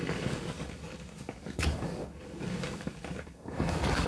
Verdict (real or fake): fake